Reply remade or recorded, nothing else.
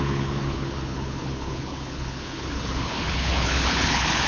remade